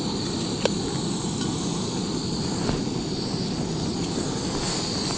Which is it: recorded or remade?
recorded